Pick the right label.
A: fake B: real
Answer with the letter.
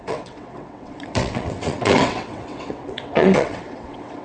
A